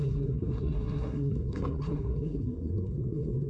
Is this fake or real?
fake